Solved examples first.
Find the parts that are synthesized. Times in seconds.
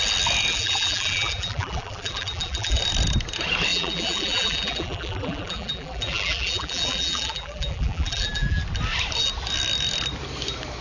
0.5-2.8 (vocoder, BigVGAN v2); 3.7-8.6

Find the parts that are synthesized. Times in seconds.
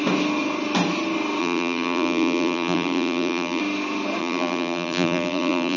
1.4-3.6 (vocoder, BigVGAN v2); 4.2-5.8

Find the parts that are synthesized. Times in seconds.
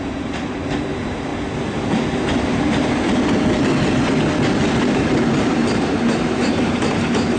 0.0-1.3 (vocoder, BigVGAN v2); 4.8-7.4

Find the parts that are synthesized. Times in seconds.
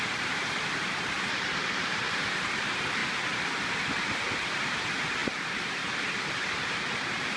0.0-3.0 (vocoder, BigVGAN v2); 4.0-7.4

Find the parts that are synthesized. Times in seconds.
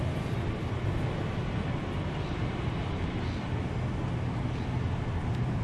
none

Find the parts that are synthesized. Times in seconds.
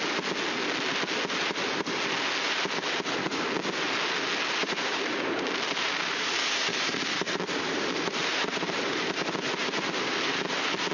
4.6-9.0 (vocoder, BigVGAN v2)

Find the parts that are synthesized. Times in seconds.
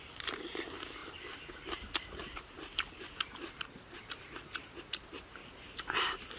0.0-5.4 (vocoder, BigVGAN v2); 6.0-6.4